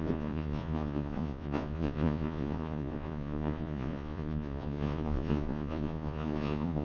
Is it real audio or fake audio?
fake